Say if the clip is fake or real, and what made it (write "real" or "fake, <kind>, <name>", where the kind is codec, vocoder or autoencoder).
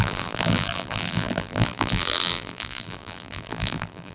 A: fake, vocoder, BigVGAN v2